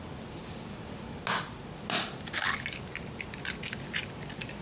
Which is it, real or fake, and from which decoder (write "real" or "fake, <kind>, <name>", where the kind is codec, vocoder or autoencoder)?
real